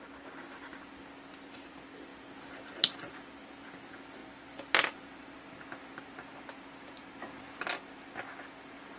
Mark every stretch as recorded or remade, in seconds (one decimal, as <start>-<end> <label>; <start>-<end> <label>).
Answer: 0.0-9.0 recorded